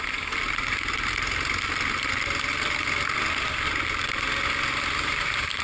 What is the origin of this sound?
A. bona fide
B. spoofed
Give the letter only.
A